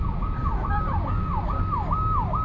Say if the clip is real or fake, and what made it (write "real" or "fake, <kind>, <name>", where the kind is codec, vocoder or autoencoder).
real